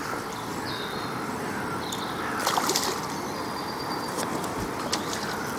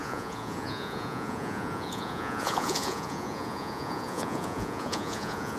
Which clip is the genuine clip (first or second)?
first